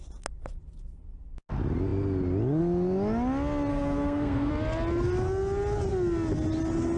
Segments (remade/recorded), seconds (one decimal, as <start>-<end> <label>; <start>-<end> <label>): 0.0-3.7 recorded; 3.7-4.5 remade; 4.5-7.0 recorded